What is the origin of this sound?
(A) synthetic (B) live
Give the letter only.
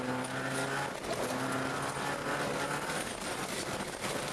B